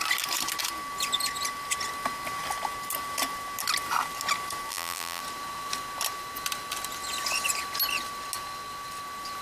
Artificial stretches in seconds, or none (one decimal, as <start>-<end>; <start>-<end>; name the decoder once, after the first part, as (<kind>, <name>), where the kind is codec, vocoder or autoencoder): 4.7-5.2 (vocoder, BigVGAN v2)